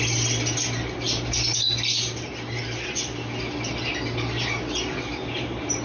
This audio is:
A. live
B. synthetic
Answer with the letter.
A